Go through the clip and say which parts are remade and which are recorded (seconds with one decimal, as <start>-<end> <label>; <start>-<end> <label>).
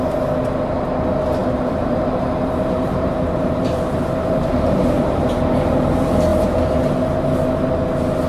0.0-1.4 recorded; 1.4-5.4 remade; 5.4-8.3 recorded